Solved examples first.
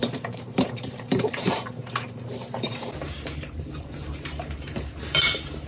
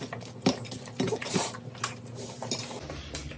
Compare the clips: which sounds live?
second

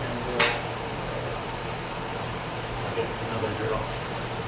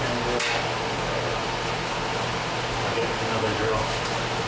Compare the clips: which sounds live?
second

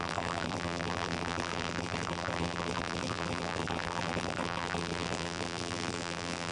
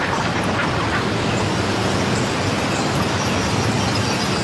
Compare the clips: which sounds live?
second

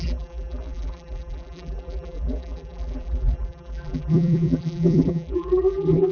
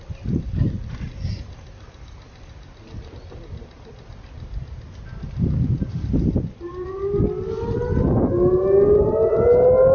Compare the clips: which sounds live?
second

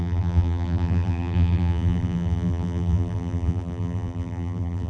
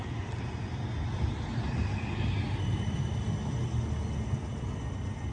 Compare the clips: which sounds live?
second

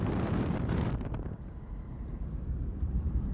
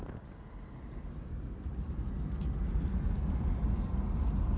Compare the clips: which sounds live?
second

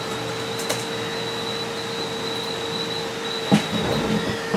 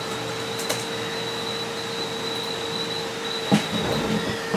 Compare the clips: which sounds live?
first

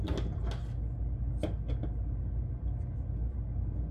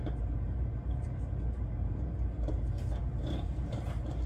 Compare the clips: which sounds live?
first